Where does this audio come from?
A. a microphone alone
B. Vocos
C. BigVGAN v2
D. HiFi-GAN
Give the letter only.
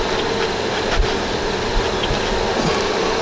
A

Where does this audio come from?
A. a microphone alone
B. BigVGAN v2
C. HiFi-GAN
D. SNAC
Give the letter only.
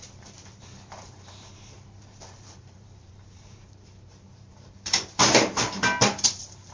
B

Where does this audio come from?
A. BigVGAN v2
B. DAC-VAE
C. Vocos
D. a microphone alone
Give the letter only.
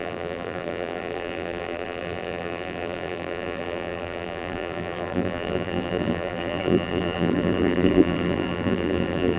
A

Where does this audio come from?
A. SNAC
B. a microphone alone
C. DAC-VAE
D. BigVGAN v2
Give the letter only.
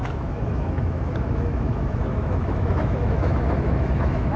C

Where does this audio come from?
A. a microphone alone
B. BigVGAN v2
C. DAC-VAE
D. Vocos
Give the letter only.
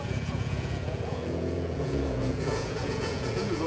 D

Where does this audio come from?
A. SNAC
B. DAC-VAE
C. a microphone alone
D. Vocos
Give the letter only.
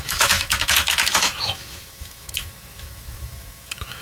B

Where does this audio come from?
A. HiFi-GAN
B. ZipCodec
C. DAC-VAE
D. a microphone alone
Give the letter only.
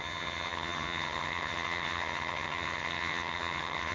A